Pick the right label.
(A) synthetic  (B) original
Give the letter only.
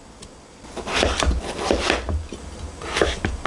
B